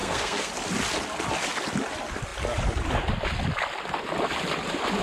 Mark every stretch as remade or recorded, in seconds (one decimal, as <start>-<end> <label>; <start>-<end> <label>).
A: 0.0-0.5 remade; 0.5-5.0 recorded